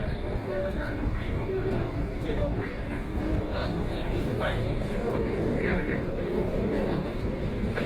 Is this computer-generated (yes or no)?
yes